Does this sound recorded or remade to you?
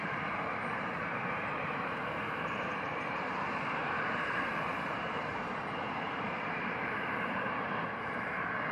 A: remade